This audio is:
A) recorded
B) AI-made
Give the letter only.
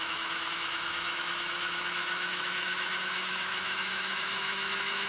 B